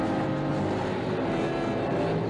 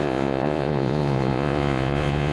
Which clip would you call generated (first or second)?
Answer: second